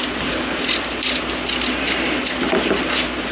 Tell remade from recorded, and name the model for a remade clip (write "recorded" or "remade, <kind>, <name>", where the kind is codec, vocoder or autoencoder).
recorded